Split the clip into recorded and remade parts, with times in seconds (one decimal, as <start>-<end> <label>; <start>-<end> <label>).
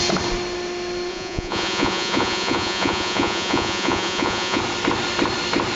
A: 0.0-1.1 recorded; 1.1-4.6 remade; 4.6-5.8 recorded